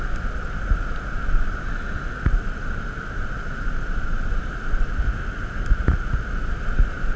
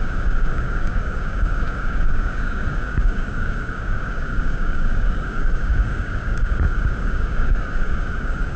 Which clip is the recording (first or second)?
first